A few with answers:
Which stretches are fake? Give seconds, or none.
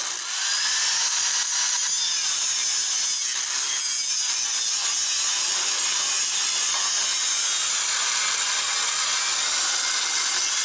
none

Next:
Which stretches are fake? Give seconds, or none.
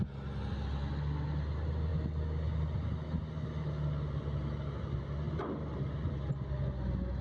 none